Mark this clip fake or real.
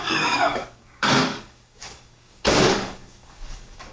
fake